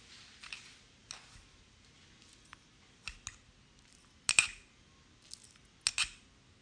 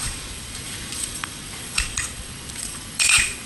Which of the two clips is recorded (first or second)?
first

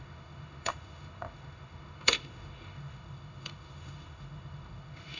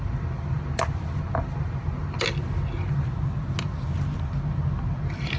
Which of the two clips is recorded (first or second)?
second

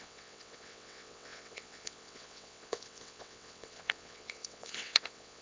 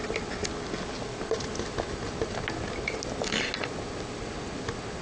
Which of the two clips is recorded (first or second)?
second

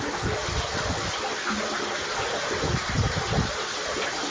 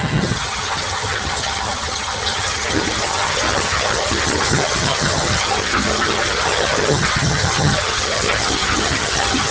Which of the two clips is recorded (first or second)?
first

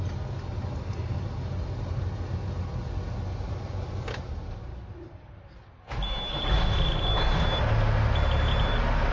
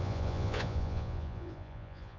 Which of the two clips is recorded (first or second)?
first